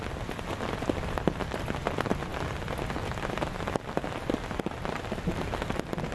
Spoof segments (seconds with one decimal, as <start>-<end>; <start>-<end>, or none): none